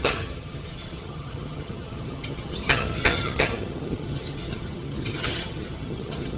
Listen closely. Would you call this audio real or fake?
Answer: fake